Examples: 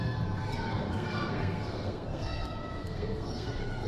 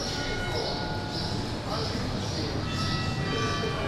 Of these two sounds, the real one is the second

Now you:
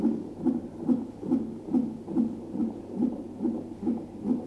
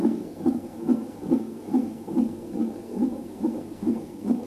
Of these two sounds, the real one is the first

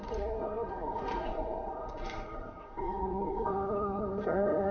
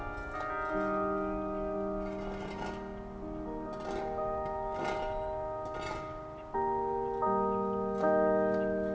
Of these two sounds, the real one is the second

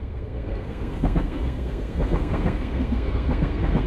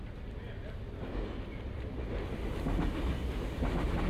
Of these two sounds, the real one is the second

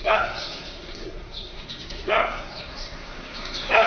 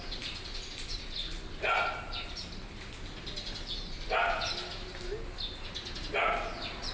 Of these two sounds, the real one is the second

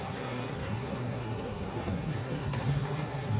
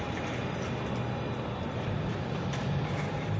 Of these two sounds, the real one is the second